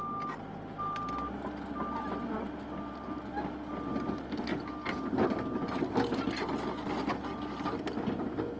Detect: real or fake real